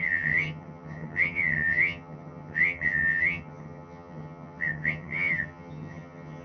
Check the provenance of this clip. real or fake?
fake